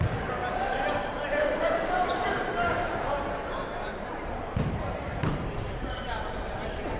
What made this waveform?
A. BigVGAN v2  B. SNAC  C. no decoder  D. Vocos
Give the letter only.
A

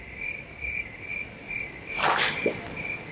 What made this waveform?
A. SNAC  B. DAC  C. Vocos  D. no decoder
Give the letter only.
D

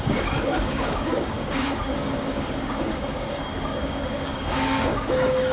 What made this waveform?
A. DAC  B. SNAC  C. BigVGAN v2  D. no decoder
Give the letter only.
A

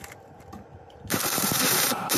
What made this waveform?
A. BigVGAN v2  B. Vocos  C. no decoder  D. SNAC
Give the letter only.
A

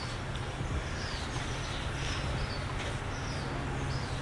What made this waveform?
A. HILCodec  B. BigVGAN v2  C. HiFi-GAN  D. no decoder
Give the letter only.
D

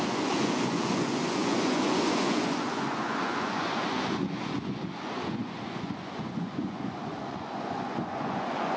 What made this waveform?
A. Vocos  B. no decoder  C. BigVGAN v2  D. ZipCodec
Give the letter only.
A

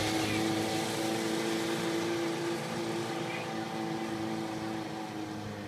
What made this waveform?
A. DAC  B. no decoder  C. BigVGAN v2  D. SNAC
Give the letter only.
B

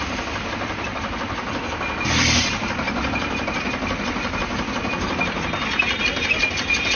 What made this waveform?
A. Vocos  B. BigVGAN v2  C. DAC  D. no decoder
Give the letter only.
D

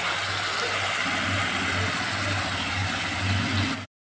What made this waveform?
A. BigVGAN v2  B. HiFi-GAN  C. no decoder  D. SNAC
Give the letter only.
C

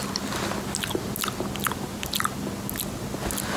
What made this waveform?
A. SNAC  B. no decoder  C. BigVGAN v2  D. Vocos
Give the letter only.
B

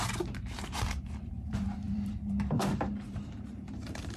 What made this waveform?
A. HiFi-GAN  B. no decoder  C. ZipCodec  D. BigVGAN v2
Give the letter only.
D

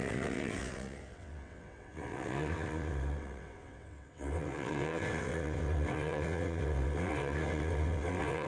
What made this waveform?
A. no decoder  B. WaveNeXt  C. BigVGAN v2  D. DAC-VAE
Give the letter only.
B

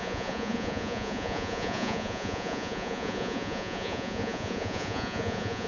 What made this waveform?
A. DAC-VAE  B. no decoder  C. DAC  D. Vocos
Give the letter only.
D